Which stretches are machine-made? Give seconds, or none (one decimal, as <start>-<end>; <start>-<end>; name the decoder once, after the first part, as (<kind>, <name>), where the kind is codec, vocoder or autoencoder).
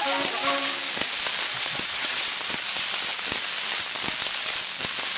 1.5-2.3 (vocoder, WaveNeXt)